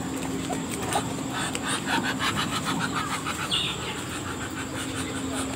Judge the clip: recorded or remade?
recorded